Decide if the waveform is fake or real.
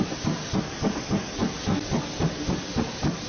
real